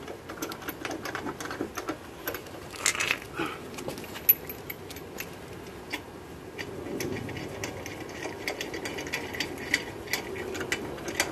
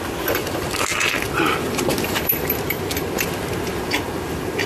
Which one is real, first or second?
first